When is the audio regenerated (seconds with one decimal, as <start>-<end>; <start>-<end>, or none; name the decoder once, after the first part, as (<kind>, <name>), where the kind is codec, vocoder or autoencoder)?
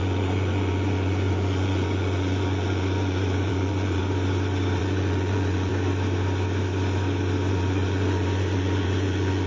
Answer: 0.0-4.0 (vocoder, Vocos); 4.8-5.7; 7.5-9.5